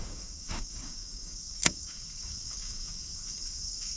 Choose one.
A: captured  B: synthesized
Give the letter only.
B